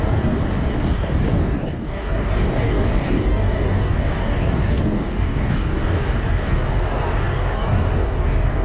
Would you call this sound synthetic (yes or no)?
yes